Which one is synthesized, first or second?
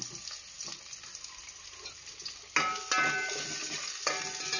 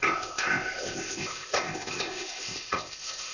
second